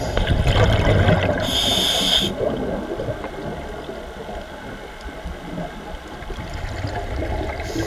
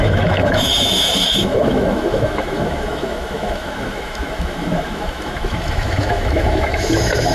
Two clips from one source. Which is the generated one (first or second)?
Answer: second